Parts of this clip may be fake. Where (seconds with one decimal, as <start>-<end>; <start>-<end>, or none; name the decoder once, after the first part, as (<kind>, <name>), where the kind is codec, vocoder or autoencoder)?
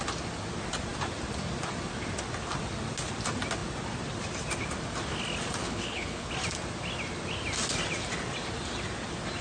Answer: 5.6-6.3 (codec, HILCodec)